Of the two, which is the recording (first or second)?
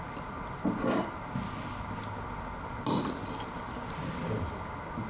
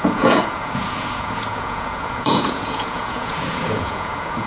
first